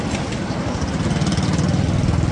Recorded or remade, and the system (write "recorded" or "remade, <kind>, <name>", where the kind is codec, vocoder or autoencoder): recorded